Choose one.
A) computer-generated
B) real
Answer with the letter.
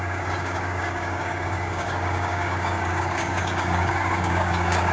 A